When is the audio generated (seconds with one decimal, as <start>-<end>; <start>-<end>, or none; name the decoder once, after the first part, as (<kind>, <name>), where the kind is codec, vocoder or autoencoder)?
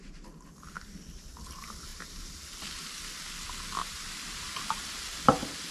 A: 1.9-2.4 (vocoder, BigVGAN v2); 3.8-4.6